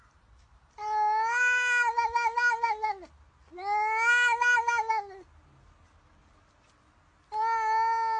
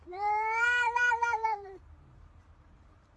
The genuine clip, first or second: first